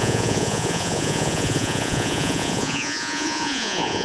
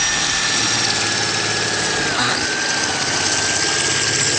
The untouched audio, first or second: second